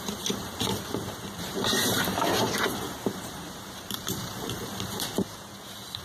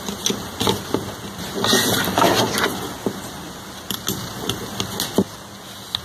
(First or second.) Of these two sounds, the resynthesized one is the first